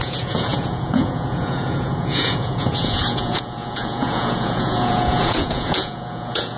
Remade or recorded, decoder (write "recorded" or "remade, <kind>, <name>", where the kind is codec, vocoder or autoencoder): remade, vocoder, Vocos